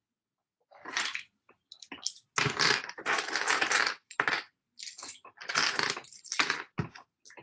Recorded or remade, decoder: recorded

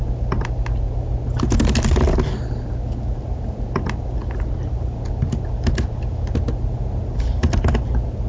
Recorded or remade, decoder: recorded